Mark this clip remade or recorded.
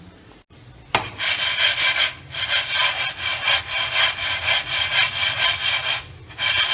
recorded